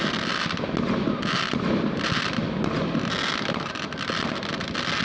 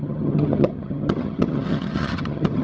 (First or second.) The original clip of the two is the first